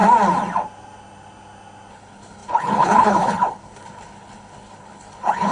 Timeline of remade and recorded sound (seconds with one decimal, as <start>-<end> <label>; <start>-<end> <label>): 0.0-1.9 recorded; 1.9-5.5 remade